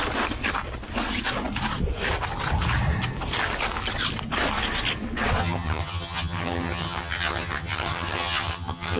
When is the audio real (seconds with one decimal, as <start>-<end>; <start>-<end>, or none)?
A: 0.0-5.4